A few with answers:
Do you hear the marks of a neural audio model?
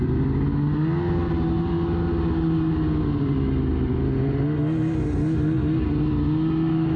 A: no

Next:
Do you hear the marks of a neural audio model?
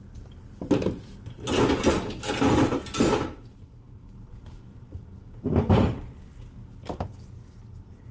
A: no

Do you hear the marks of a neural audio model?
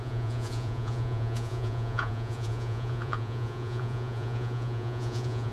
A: yes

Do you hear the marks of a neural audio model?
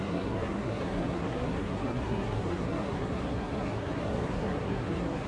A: yes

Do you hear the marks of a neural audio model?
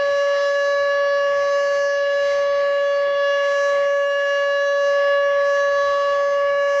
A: yes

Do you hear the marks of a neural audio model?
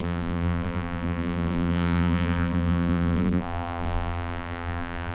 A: yes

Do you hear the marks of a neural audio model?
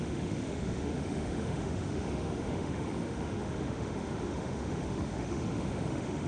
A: yes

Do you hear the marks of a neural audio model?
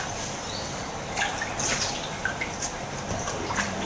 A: no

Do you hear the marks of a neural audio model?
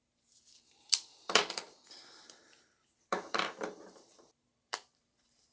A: yes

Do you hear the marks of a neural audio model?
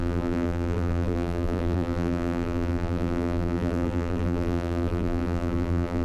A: yes